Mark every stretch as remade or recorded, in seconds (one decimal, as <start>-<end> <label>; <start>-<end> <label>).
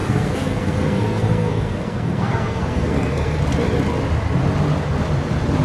0.0-3.4 remade; 3.4-5.6 recorded